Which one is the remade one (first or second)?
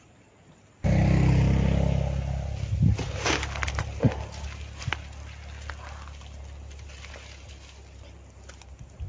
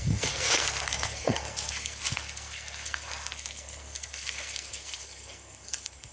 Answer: second